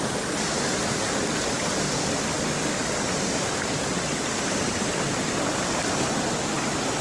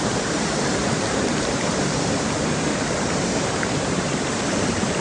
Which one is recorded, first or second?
first